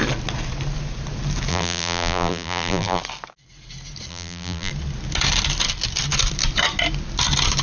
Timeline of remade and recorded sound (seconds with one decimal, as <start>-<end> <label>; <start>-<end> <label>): 0.0-1.5 recorded; 1.5-3.0 remade; 3.0-4.1 recorded; 4.1-4.7 remade; 4.7-7.6 recorded

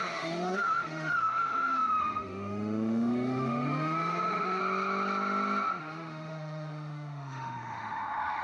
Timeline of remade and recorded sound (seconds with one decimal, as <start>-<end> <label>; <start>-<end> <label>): 0.0-4.6 remade; 4.6-5.8 recorded; 5.8-8.4 remade

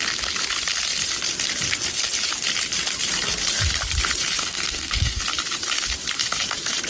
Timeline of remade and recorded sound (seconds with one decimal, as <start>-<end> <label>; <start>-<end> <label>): 0.0-4.4 recorded; 4.4-5.2 remade; 5.2-6.9 recorded